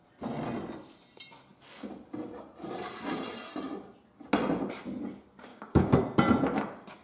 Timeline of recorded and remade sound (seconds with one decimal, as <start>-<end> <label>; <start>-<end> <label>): 0.0-5.5 recorded; 5.5-6.0 remade; 6.0-7.0 recorded